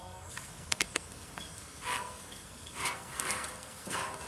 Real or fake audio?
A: fake